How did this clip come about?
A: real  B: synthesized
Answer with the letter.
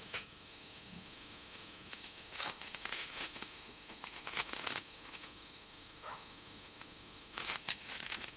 B